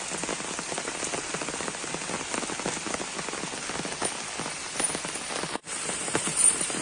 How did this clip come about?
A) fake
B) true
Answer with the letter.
B